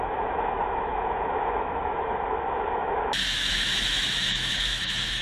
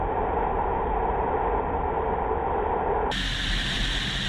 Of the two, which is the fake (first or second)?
first